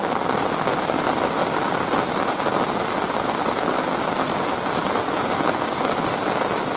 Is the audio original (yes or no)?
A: yes